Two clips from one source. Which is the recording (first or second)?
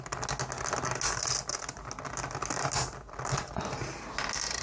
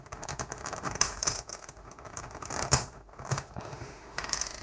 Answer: first